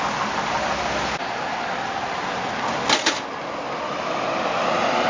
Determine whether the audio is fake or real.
real